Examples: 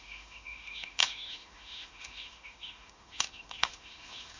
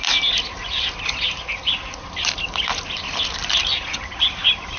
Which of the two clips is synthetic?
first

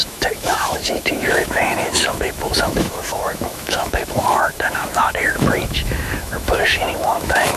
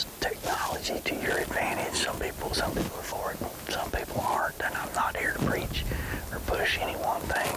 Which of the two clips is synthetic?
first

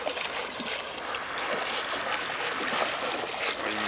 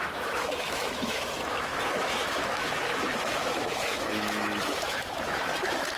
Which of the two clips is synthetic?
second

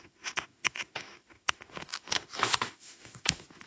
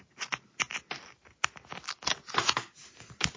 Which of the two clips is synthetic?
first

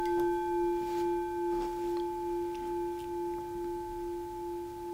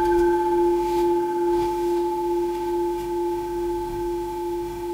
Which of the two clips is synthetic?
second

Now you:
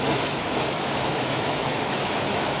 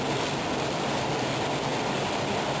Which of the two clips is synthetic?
first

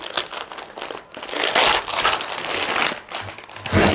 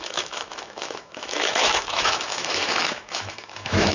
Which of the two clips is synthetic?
second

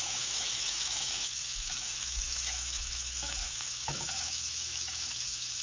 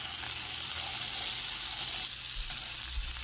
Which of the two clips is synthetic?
first